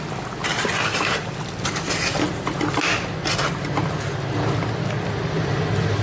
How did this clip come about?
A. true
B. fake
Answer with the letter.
A